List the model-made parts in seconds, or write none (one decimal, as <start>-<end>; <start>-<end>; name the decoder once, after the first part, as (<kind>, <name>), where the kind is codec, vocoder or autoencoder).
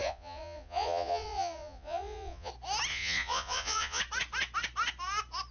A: 0.0-2.5 (vocoder, Vocos); 2.9-4.0